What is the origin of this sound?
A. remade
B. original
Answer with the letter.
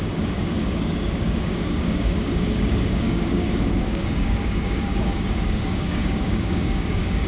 A